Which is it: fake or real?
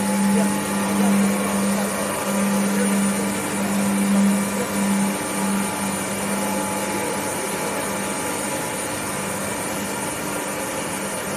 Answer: real